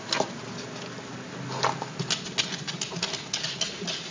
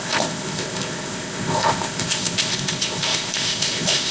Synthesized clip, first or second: second